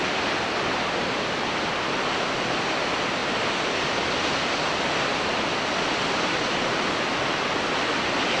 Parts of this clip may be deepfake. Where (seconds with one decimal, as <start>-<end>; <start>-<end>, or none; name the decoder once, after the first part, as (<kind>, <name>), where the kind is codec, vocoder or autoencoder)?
none